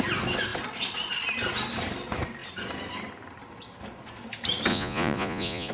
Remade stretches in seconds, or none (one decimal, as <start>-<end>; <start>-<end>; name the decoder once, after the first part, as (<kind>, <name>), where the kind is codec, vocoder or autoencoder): 4.7-5.7 (vocoder, Vocos)